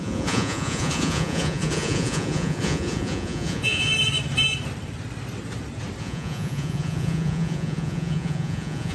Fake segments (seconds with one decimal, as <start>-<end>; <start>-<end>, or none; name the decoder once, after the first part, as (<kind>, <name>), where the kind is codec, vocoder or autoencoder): 0.0-3.9 (vocoder, Vocos); 6.0-8.9